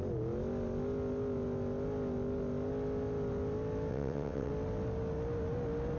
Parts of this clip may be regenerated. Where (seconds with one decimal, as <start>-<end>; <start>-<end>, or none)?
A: 3.9-4.5